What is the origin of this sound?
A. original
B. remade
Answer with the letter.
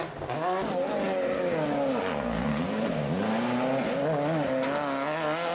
A